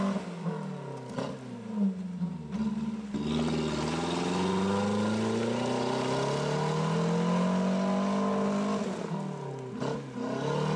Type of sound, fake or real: real